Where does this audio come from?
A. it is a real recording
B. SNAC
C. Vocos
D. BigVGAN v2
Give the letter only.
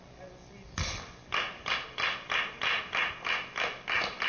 A